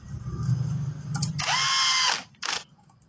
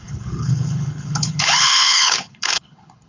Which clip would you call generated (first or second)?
second